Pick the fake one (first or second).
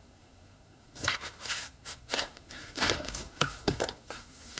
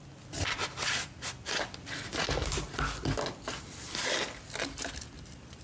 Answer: first